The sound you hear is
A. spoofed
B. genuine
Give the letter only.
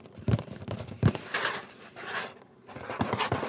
B